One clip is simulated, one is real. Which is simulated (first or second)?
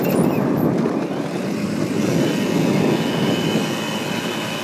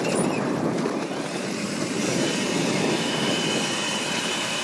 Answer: second